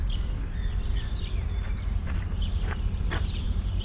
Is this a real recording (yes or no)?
no